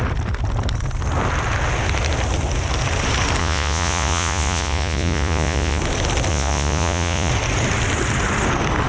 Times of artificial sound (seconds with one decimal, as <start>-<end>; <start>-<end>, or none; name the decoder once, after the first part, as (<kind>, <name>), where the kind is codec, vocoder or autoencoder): 3.4-5.8 (vocoder, Vocos); 6.3-7.3